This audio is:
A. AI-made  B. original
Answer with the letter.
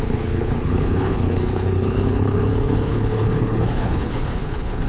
A